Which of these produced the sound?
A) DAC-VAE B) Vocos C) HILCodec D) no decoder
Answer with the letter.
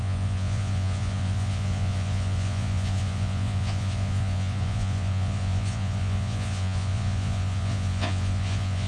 B